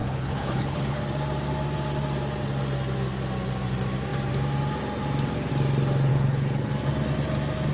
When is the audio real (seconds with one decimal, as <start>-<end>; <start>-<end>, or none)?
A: 1.0-6.1; 6.7-7.7